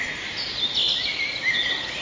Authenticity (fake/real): real